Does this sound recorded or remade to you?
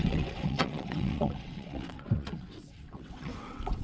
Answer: remade